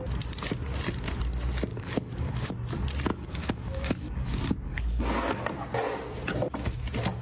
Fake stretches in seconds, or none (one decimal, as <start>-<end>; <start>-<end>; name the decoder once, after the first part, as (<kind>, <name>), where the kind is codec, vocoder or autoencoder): 1.7-2.5 (codec, DAC); 3.1-5.0